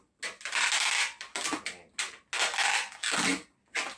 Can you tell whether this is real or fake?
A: real